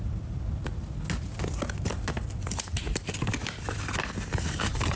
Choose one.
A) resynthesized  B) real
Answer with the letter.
B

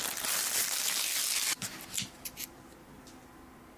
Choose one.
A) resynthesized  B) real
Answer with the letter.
B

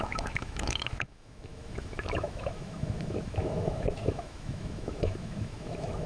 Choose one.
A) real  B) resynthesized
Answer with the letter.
B